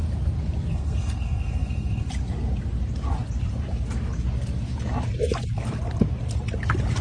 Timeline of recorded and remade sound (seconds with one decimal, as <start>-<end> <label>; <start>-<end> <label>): 0.0-0.7 recorded; 0.7-2.1 remade; 2.1-7.0 recorded